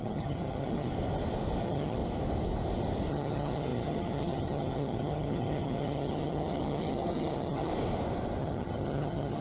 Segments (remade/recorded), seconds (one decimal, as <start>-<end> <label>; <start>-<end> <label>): 0.0-0.9 remade; 0.9-1.6 recorded; 1.6-2.0 remade; 2.0-3.1 recorded; 3.1-7.7 remade; 7.7-8.4 recorded; 8.4-9.4 remade